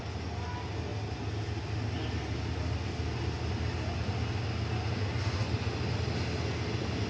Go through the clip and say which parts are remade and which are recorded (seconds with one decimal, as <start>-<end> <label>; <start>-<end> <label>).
0.0-7.1 recorded